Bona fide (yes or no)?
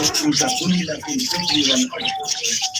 no